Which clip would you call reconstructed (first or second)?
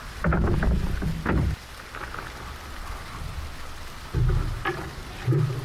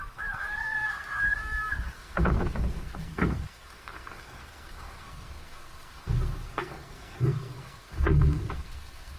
second